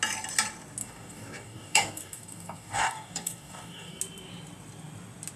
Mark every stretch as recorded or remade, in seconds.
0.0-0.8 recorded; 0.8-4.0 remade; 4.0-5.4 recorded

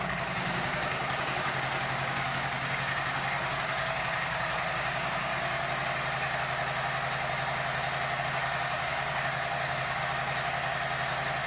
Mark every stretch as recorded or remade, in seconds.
0.0-5.3 remade; 5.3-8.2 recorded; 8.2-10.0 remade; 10.0-11.5 recorded